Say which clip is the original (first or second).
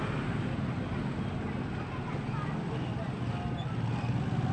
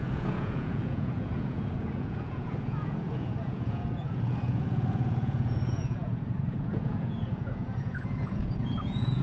first